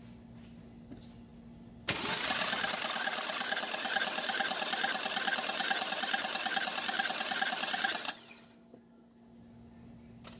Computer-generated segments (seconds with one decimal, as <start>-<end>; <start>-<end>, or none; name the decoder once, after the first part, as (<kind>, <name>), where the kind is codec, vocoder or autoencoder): none